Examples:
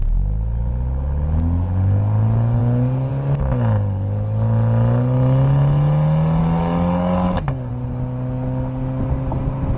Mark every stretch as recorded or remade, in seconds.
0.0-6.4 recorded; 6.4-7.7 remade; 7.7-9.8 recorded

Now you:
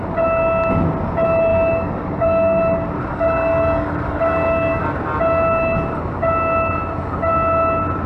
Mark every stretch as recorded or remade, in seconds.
0.0-1.5 recorded; 1.5-2.6 remade; 2.6-3.1 recorded; 3.1-4.8 remade; 4.8-8.1 recorded

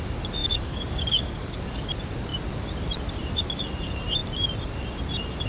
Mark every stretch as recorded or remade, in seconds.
0.0-0.4 recorded; 0.4-1.9 remade; 1.9-5.5 recorded